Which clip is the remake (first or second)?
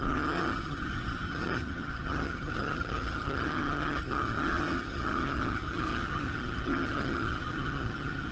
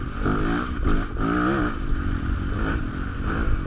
first